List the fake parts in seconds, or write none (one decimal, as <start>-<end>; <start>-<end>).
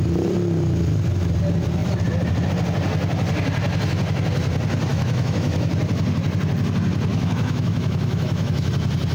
4.9-5.7; 7.1-8.7